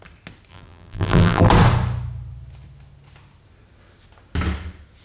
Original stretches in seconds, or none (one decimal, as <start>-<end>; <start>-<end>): 0.0-0.5; 1.5-5.0